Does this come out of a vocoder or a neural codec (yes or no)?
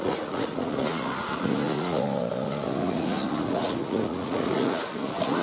yes